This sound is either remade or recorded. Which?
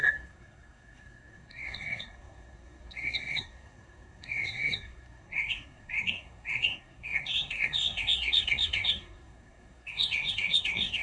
remade